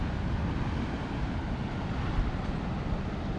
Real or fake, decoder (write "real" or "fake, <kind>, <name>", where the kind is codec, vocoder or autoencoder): real